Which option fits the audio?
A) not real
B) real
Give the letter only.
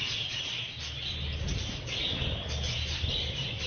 B